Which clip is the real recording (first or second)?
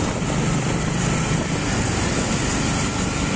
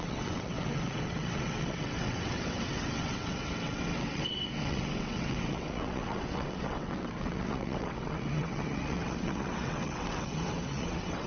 first